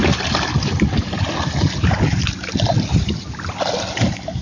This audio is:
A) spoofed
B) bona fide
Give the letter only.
B